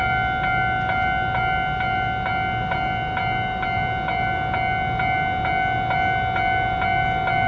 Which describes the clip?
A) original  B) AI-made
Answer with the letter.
A